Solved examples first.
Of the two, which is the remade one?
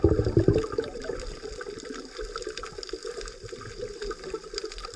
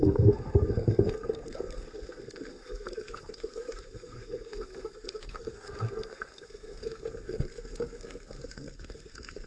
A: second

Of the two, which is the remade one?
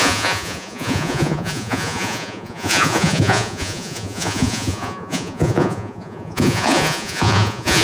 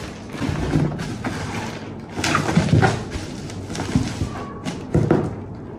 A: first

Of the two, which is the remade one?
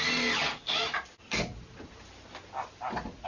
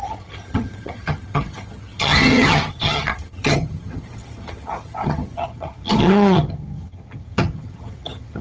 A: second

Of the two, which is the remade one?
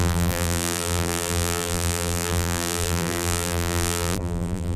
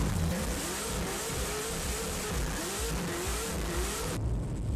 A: first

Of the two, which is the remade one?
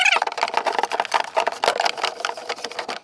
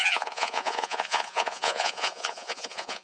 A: second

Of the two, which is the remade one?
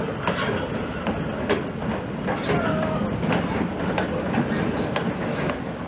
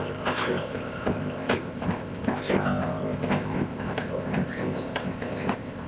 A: second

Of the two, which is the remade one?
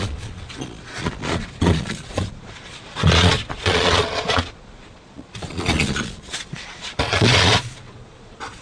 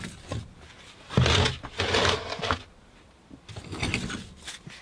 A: first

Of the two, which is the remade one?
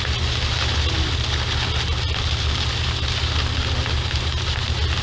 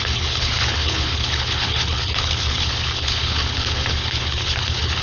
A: second